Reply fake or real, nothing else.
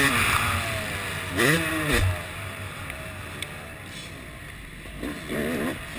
real